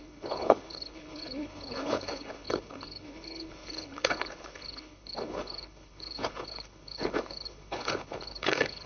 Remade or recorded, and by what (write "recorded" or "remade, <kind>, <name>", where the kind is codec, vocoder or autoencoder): remade, codec, HILCodec